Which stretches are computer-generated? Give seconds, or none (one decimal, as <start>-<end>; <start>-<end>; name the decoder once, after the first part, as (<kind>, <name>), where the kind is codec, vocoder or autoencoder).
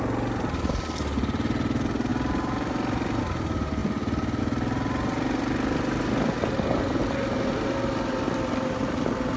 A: 2.1-3.2 (vocoder, BigVGAN v2)